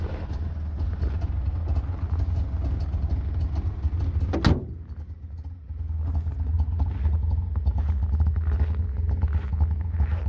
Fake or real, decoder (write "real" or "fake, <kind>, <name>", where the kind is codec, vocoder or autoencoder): real